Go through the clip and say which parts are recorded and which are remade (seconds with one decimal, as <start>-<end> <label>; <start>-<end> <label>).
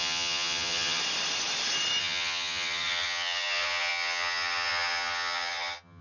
0.0-1.0 remade; 1.0-2.0 recorded; 2.0-6.0 remade